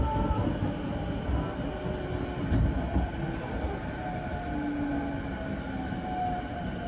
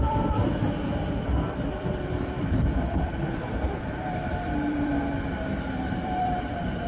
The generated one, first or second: second